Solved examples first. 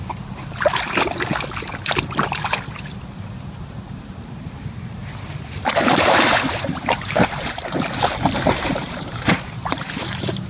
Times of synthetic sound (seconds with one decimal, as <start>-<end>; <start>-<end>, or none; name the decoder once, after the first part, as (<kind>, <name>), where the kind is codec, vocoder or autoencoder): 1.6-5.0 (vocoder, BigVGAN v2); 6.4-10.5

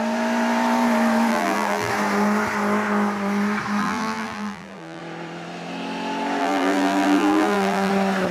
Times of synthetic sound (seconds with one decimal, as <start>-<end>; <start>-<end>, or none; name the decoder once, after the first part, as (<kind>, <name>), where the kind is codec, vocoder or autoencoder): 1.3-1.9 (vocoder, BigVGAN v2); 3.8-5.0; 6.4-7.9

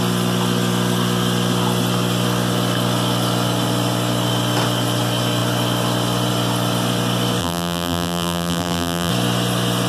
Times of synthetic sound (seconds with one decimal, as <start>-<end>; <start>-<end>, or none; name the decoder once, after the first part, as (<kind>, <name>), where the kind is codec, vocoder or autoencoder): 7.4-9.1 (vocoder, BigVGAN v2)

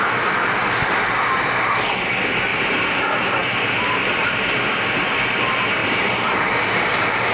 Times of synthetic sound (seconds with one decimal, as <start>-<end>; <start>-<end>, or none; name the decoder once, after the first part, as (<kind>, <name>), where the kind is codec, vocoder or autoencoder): 2.5-4.7 (vocoder, BigVGAN v2); 5.8-7.3

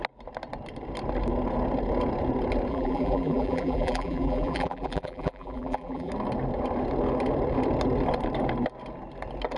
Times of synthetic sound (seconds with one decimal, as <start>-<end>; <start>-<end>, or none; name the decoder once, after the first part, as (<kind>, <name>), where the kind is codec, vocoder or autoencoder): 2.7-6.1 (vocoder, BigVGAN v2)